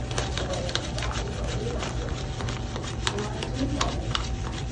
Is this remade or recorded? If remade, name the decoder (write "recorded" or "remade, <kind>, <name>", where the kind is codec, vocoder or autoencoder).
remade, vocoder, BigVGAN v2